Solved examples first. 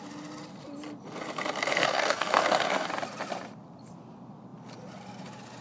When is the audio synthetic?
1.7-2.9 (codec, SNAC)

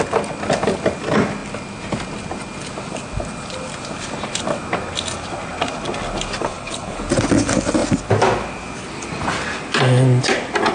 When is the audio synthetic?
6.4-7.0 (codec, HILCodec)

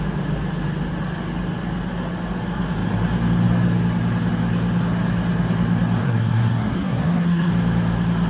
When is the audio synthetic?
6.0-7.5 (codec, SNAC)

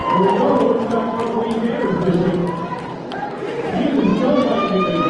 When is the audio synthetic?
0.7-4.1 (vocoder, BigVGAN v2)

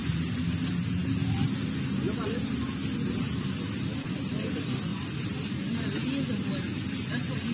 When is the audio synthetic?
none